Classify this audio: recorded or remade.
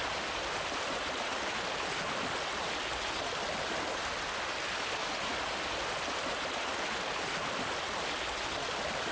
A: recorded